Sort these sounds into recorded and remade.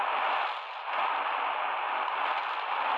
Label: recorded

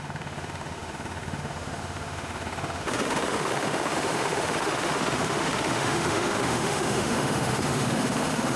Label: remade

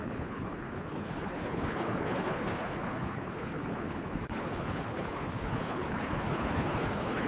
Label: remade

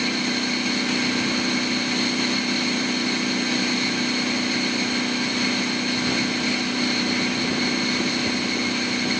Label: recorded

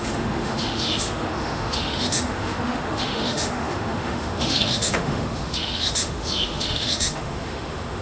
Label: remade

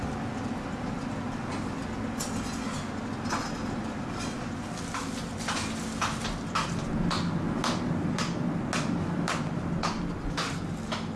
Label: recorded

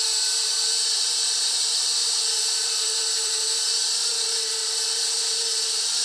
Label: remade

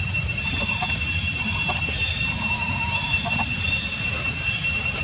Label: remade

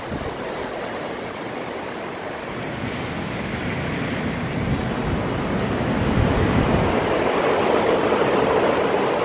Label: recorded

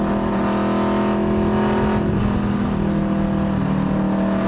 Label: recorded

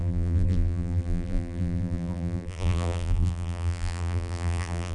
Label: remade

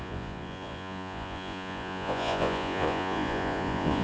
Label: remade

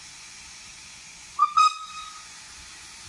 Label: remade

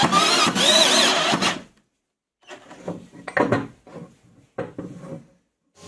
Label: recorded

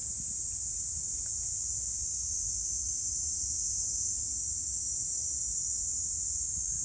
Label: recorded